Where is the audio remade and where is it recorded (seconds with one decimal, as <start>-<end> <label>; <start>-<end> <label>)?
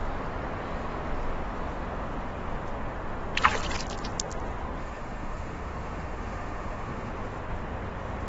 0.0-4.8 recorded; 4.8-7.1 remade; 7.1-8.3 recorded